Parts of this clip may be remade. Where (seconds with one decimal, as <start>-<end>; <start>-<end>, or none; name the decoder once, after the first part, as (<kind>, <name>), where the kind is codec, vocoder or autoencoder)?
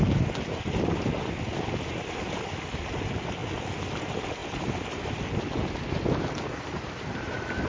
none